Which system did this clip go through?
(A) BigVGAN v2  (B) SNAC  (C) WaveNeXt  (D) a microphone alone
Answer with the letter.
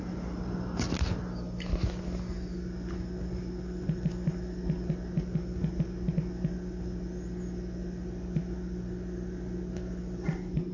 D